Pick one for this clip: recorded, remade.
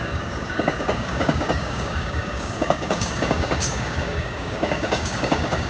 remade